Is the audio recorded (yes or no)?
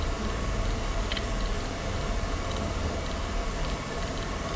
no